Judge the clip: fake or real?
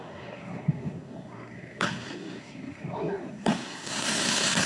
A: fake